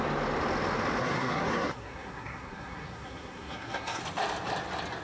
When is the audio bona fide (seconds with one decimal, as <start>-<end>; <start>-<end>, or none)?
0.0-1.0; 4.0-5.0